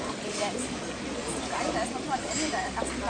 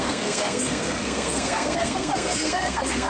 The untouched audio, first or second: first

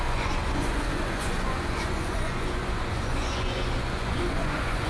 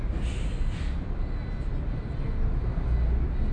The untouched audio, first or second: second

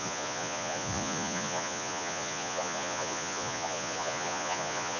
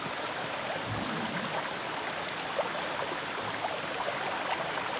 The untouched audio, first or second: second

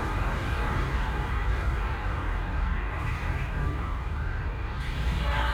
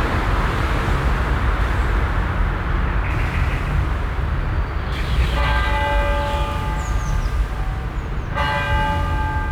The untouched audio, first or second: second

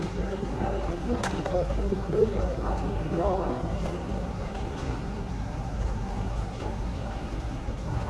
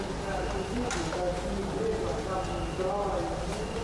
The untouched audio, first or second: second